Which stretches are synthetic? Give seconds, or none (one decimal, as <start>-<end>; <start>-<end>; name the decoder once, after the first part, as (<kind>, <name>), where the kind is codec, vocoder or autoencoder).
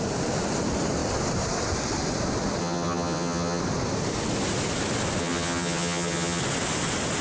2.6-3.6 (vocoder, HiFi-GAN); 5.2-6.4